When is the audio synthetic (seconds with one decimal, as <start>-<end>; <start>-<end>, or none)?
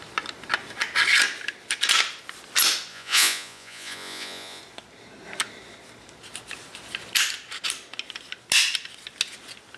2.9-4.6